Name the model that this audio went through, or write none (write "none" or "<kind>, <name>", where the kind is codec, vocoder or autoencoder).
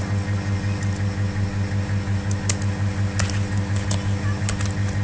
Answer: none